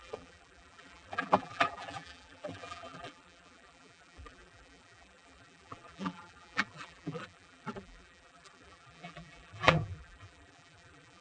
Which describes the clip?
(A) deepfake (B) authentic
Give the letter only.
A